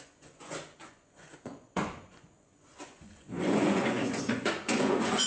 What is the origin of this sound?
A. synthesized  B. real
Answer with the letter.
A